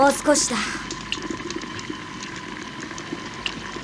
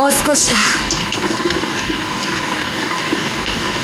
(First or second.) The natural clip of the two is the first